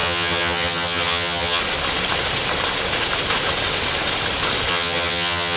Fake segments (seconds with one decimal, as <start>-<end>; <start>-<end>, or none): 0.0-1.6; 4.7-5.6